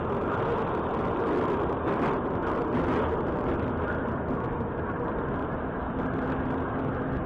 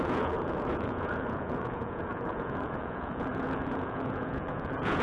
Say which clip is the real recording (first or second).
first